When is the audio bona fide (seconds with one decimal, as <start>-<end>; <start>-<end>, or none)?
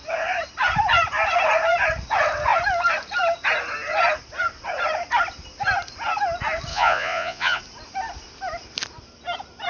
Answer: 0.0-6.7; 7.6-9.7